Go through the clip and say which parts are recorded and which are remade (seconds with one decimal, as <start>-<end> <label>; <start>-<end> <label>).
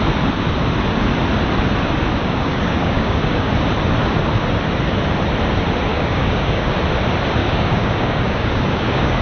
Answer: 0.0-2.2 recorded; 2.2-3.5 remade; 3.5-5.9 recorded; 5.9-6.7 remade; 6.7-7.4 recorded; 7.4-9.2 remade